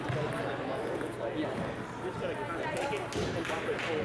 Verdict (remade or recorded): recorded